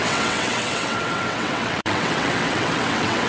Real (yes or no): no